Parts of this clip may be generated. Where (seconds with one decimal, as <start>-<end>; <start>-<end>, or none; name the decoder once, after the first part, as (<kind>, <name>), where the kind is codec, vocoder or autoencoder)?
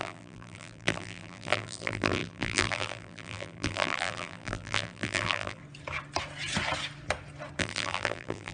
0.0-5.6 (vocoder, BigVGAN v2); 7.6-8.5